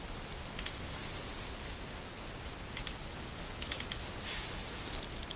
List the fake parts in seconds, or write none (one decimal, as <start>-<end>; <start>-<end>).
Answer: 3.1-3.9